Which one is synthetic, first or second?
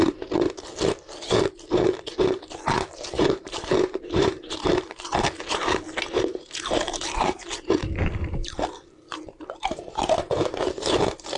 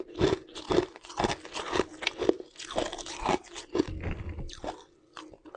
first